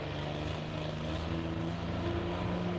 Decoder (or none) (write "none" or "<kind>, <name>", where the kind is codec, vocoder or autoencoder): none